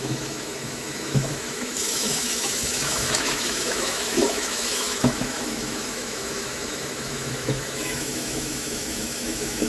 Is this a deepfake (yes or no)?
yes